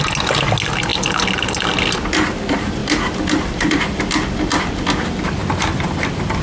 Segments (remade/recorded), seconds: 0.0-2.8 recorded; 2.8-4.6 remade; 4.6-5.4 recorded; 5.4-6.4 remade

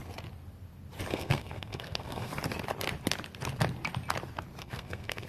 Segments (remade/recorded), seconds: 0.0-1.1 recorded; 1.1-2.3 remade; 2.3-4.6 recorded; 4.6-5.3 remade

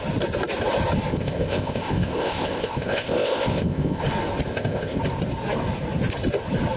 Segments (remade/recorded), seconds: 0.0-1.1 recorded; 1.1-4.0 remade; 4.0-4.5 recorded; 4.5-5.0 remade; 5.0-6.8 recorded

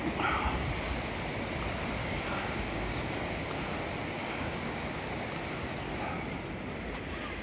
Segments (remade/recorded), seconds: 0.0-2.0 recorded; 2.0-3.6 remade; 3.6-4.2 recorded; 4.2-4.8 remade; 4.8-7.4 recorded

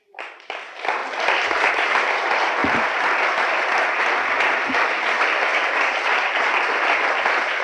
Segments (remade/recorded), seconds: 0.0-1.0 remade; 1.0-1.7 recorded; 1.7-5.5 remade; 5.5-6.2 recorded; 6.2-7.6 remade

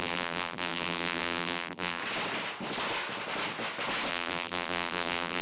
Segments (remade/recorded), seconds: 0.0-2.0 remade; 2.0-4.1 recorded; 4.1-5.4 remade

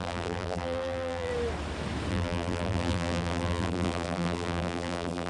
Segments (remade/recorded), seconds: 0.0-1.3 remade; 1.3-2.1 recorded; 2.1-5.3 remade